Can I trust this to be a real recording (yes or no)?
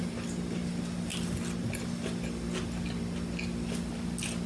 yes